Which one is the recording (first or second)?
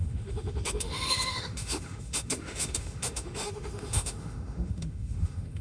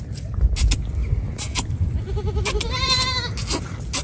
second